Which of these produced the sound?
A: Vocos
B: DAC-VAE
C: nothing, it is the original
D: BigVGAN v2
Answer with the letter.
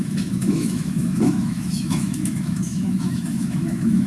B